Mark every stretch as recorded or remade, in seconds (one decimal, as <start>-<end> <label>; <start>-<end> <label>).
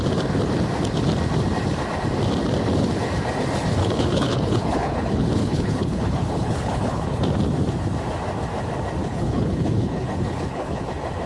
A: 0.0-3.8 recorded; 3.8-7.2 remade; 7.2-9.0 recorded; 9.0-10.9 remade; 10.9-11.3 recorded